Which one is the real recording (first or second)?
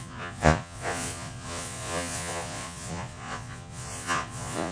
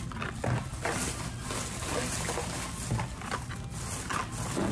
second